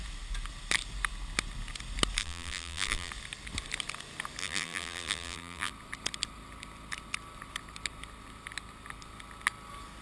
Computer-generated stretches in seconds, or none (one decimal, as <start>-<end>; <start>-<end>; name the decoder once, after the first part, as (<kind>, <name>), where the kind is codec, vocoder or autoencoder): 2.2-3.1 (vocoder, BigVGAN v2); 4.4-5.7